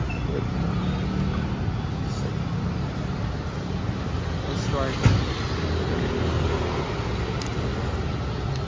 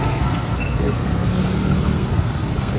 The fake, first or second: second